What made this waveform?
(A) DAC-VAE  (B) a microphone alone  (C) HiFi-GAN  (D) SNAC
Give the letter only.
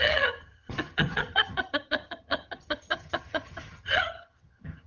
C